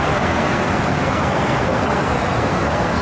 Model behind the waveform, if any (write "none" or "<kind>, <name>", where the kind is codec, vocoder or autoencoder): codec, SNAC